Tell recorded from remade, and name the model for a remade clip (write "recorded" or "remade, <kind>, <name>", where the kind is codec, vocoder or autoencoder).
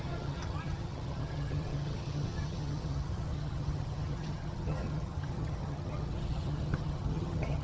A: remade, vocoder, HiFi-GAN